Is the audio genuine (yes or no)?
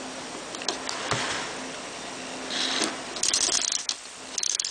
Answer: yes